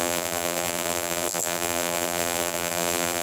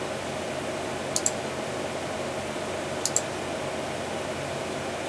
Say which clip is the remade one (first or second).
first